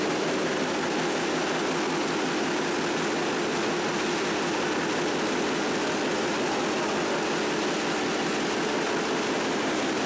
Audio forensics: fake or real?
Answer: real